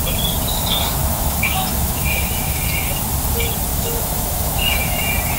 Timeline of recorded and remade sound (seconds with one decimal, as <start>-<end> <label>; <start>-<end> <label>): 0.0-1.0 recorded; 1.0-2.6 remade; 2.6-3.7 recorded; 3.7-5.0 remade; 5.0-5.4 recorded